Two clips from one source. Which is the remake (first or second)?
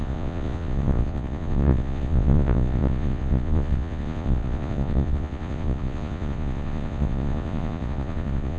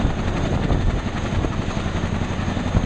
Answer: first